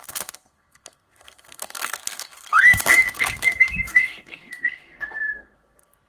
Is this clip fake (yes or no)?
yes